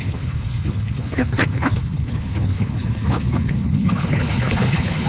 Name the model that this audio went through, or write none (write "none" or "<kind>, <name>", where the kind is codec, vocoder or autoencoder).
codec, HILCodec